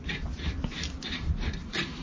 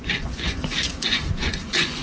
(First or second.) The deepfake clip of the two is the second